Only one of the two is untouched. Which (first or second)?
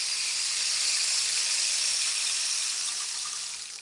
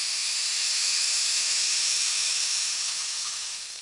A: first